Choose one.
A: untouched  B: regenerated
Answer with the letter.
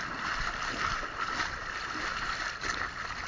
A